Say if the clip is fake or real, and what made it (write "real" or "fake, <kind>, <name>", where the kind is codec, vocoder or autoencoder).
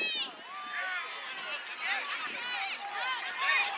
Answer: real